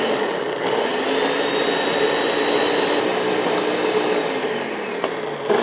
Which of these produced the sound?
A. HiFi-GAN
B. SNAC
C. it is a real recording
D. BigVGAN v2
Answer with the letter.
C